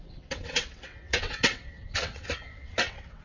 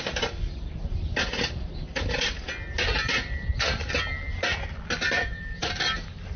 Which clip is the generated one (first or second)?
first